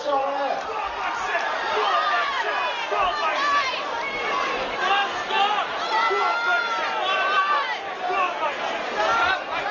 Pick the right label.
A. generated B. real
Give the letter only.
B